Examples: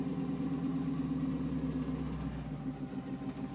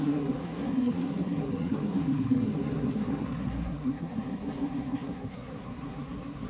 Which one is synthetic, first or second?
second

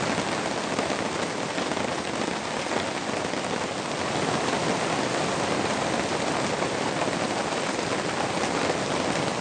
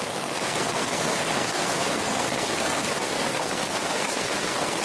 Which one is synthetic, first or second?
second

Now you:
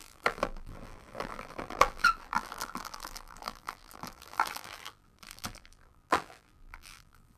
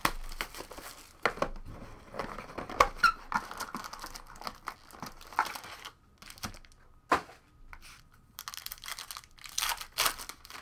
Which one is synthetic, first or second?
first